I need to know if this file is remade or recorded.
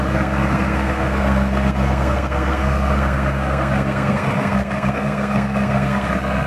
remade